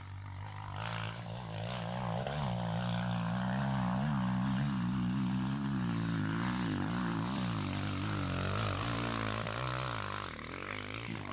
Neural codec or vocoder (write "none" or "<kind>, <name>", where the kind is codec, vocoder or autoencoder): none